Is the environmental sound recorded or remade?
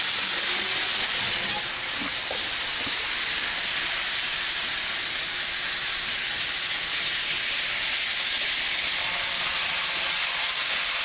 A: recorded